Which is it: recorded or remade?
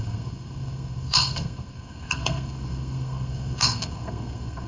remade